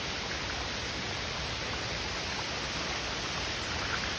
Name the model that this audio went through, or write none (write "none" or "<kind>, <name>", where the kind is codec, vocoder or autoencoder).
none